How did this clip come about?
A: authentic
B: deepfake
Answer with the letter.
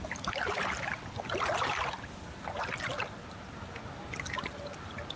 A